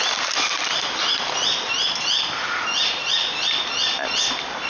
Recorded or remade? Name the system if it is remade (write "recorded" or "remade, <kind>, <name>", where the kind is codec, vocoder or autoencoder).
recorded